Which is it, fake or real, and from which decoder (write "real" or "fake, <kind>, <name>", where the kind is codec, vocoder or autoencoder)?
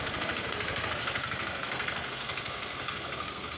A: fake, codec, SNAC